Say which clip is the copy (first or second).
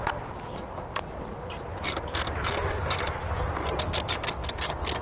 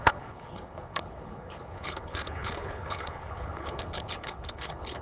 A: second